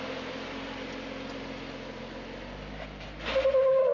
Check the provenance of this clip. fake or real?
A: real